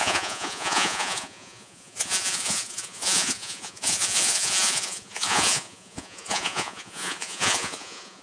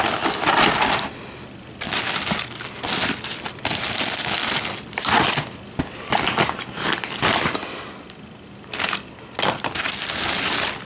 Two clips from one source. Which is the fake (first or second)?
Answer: first